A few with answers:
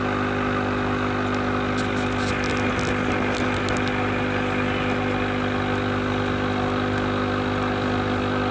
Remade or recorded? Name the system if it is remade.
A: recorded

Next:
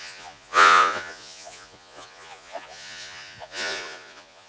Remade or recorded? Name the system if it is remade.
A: remade, vocoder, Vocos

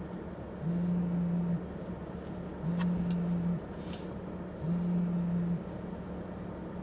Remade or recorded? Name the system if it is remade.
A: recorded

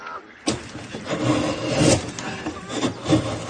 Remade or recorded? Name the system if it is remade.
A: recorded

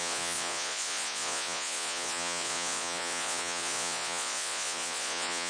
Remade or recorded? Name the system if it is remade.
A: remade, vocoder, Vocos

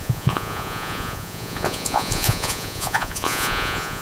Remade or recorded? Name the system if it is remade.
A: remade, vocoder, Vocos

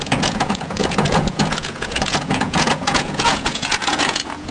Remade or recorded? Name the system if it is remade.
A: remade, vocoder, Vocos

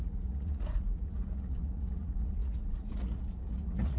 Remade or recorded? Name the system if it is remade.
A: remade, vocoder, Vocos